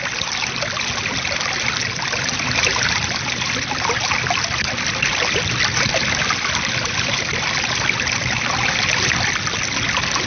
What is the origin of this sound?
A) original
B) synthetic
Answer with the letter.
A